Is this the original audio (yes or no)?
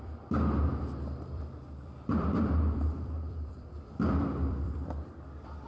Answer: no